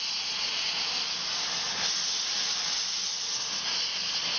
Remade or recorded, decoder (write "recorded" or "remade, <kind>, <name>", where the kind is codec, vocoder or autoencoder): recorded